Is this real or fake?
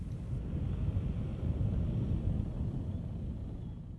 real